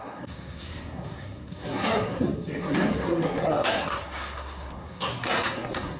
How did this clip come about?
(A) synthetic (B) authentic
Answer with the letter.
A